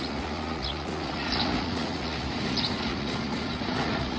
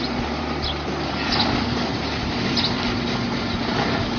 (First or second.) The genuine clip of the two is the second